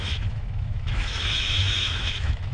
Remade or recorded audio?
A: remade